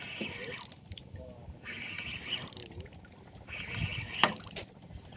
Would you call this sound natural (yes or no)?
yes